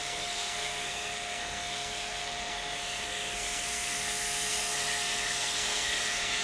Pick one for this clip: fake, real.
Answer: fake